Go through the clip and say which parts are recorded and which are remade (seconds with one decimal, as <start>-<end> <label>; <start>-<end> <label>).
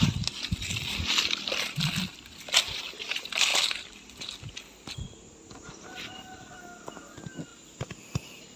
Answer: 0.0-8.6 recorded